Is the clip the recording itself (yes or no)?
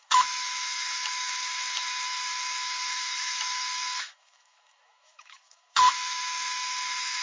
no